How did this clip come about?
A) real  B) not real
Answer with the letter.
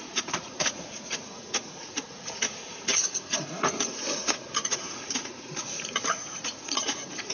B